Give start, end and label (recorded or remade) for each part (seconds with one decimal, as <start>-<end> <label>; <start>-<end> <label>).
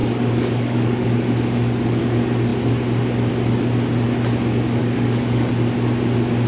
0.0-2.0 remade; 2.0-4.8 recorded; 4.8-5.5 remade; 5.5-6.5 recorded